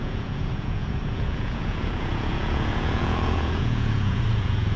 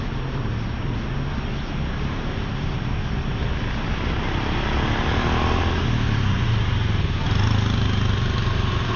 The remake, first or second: first